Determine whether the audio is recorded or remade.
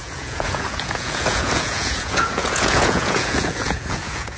remade